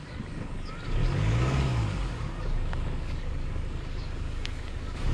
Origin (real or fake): fake